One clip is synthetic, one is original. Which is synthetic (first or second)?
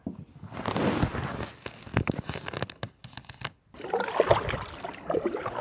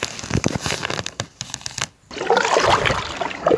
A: second